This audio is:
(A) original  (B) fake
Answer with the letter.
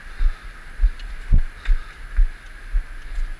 A